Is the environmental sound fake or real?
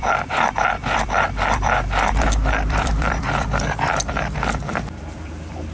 fake